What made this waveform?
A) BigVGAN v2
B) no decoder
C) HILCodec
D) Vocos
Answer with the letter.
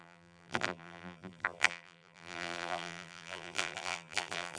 A